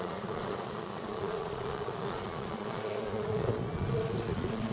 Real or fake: fake